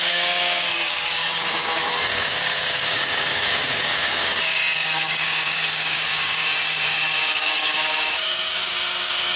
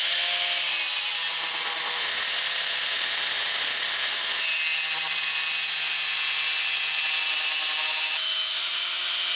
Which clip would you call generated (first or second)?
first